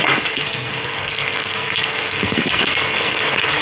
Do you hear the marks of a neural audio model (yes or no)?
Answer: yes